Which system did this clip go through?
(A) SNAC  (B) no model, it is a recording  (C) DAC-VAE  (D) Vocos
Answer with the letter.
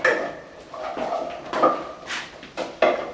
B